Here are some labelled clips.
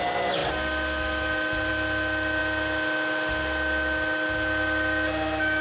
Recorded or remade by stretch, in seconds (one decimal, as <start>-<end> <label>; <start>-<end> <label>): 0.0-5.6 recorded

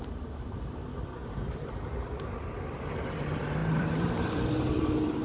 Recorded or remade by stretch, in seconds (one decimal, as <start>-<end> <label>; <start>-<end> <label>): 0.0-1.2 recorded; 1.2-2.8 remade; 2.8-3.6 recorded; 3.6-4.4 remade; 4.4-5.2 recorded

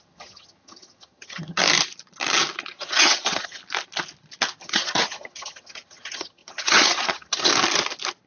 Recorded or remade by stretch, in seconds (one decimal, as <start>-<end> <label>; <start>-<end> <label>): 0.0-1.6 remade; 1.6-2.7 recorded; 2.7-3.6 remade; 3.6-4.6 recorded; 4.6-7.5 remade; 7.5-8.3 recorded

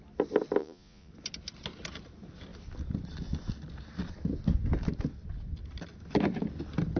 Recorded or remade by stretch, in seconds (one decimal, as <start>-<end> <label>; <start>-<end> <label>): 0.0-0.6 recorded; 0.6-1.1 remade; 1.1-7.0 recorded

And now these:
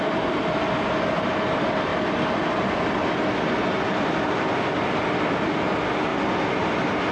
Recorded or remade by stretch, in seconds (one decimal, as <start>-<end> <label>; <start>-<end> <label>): 0.0-1.9 recorded; 1.9-5.5 remade; 5.5-6.1 recorded; 6.1-7.1 remade

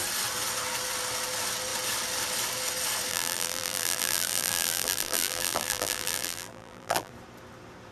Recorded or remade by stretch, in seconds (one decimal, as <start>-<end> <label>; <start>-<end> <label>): 0.0-3.1 recorded; 3.1-7.1 remade; 7.1-7.9 recorded

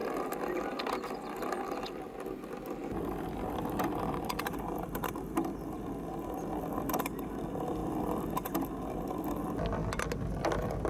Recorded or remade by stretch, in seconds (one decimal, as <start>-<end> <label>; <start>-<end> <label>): 0.0-10.9 recorded

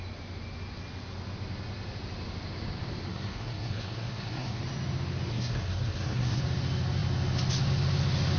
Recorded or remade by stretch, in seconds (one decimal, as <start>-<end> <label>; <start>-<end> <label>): 0.0-3.1 recorded; 3.1-4.6 remade; 4.6-5.3 recorded; 5.3-6.4 remade; 6.4-8.4 recorded